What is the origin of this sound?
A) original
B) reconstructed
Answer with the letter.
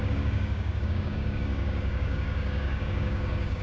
B